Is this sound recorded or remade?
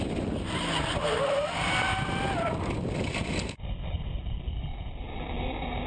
recorded